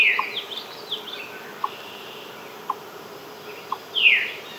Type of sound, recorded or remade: recorded